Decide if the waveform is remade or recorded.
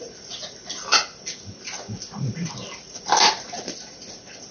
recorded